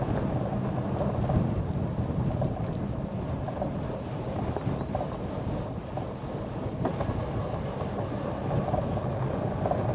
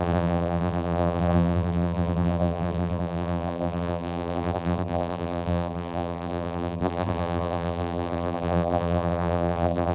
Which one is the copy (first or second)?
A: second